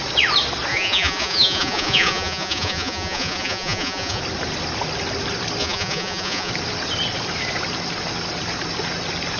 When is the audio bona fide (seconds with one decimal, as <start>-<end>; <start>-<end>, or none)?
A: 0.0-0.7; 4.2-5.6; 6.5-9.4